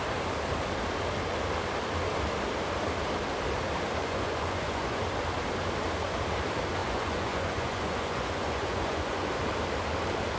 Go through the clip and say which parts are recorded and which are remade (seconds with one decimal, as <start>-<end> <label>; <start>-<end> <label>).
0.0-4.0 recorded; 4.0-5.0 remade; 5.0-6.8 recorded; 6.8-9.3 remade; 9.3-10.4 recorded